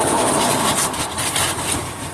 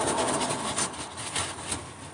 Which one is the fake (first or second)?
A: first